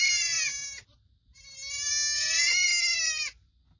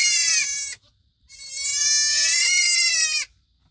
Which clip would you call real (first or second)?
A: first